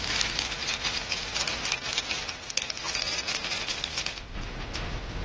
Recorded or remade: recorded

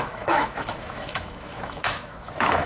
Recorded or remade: remade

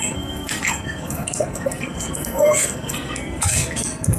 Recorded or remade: remade